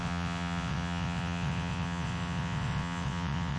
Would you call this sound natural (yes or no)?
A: no